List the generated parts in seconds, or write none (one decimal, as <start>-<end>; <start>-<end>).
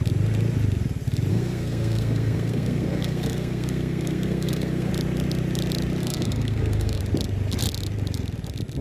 1.3-4.9; 6.0-7.0